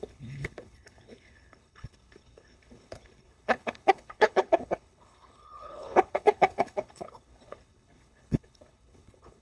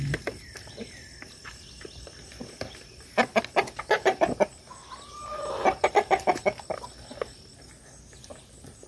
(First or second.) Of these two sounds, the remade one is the first